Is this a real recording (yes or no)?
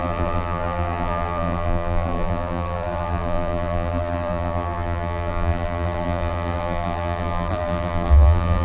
no